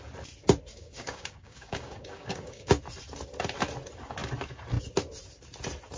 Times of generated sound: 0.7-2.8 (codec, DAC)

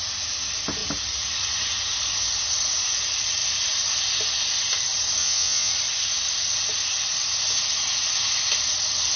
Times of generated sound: 5.2-5.7 (vocoder, Vocos)